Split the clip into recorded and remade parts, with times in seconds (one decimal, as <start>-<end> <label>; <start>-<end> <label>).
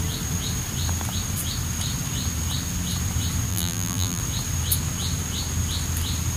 0.0-3.5 recorded; 3.5-4.2 remade; 4.2-6.4 recorded